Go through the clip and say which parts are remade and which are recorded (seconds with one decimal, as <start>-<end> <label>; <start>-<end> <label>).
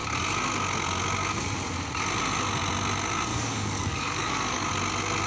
0.0-3.3 recorded; 3.3-4.7 remade; 4.7-5.3 recorded